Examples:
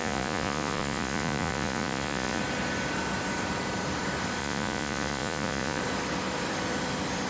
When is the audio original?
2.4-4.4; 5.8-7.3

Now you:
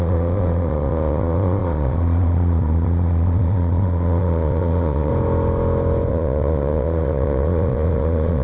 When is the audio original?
5.1-6.1

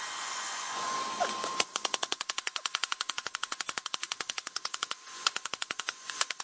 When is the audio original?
none